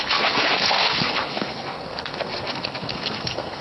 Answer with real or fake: fake